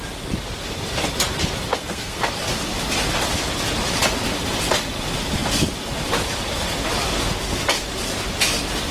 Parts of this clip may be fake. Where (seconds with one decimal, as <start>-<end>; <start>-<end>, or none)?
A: 1.7-2.2